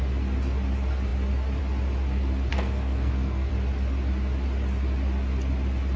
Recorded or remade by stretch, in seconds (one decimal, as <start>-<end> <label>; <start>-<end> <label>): 0.0-2.5 recorded; 2.5-3.5 remade; 3.5-6.0 recorded